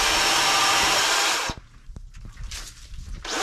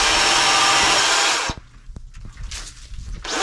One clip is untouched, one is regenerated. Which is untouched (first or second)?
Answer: second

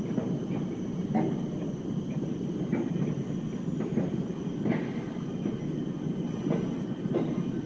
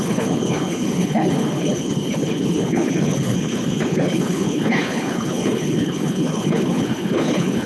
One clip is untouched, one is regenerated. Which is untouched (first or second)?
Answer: first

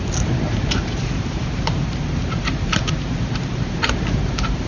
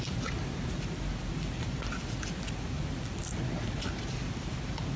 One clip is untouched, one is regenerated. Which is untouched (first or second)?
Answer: second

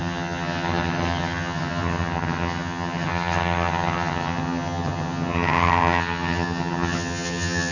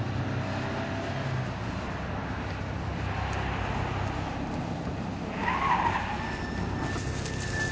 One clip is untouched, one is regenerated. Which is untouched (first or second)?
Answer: second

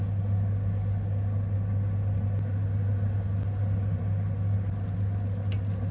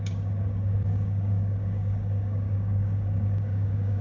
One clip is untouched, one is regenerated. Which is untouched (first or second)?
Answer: first